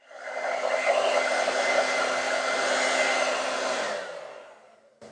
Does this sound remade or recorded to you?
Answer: recorded